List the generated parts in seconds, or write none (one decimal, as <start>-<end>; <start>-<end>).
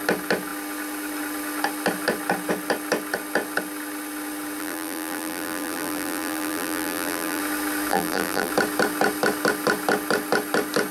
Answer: 4.6-7.4; 7.9-8.5